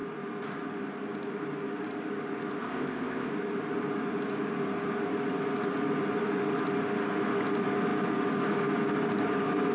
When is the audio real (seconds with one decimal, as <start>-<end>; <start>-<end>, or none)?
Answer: 0.0-2.6; 3.3-9.7